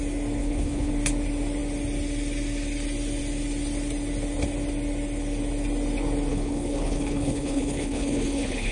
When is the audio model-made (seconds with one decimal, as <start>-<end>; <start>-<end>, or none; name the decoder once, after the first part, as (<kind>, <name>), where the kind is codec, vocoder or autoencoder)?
0.4-0.9 (codec, HILCodec); 6.3-8.7